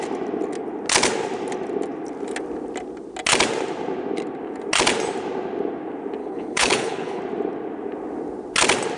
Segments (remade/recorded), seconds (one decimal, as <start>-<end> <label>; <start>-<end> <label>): 0.0-6.2 recorded; 6.2-7.2 remade; 7.2-9.0 recorded